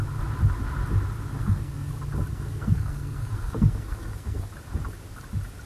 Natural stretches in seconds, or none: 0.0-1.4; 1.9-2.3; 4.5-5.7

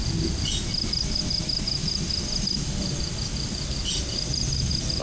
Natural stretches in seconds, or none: 0.0-5.0

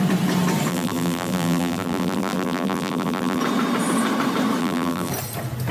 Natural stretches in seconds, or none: 0.0-0.7; 3.4-4.6; 5.1-5.7

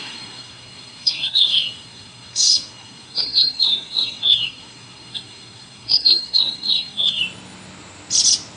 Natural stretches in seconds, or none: 7.2-8.6

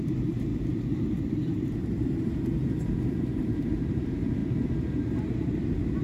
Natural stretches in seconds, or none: 4.4-5.0

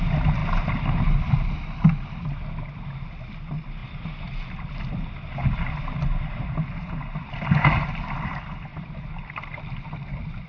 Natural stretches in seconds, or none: 0.0-3.8; 4.7-10.5

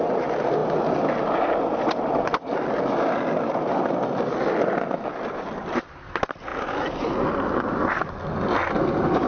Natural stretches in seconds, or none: 0.0-9.3